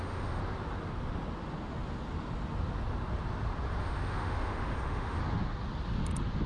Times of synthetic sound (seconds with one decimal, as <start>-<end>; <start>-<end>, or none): 0.0-0.4; 3.8-5.2